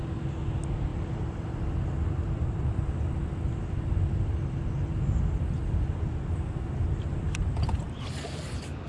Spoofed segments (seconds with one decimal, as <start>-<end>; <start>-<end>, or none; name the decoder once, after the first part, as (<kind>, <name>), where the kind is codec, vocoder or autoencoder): 0.9-1.6 (vocoder, BigVGAN v2)

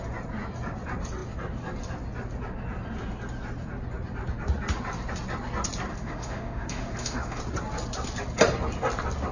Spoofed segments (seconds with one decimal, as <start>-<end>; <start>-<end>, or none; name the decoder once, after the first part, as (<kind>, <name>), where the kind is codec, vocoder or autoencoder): 5.9-7.4 (autoencoder, DAC-VAE)

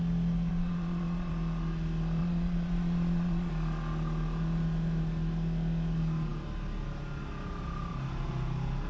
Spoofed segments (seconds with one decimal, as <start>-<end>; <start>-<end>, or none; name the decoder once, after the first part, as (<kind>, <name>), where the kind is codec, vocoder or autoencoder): 0.5-1.3 (vocoder, Vocos); 2.2-3.5

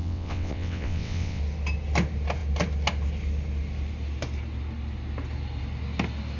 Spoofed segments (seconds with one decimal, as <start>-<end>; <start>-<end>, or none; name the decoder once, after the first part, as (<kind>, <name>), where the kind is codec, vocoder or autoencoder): 0.0-1.4 (vocoder, WaveNeXt)

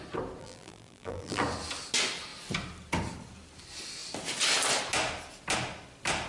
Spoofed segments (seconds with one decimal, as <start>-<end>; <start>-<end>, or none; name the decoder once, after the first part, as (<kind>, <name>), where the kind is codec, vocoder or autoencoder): 0.4-1.4 (vocoder, BigVGAN v2)